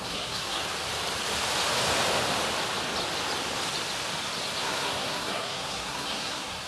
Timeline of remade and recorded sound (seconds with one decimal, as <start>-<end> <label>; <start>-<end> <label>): 0.0-0.6 remade; 0.6-4.6 recorded; 4.6-6.7 remade